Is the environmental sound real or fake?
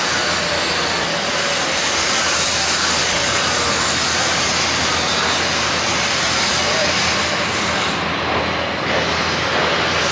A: real